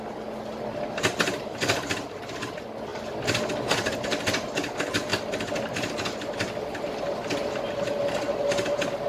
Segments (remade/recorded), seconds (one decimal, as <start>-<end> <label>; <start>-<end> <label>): 0.0-9.1 recorded